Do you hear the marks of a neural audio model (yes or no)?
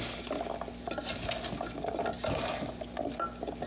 no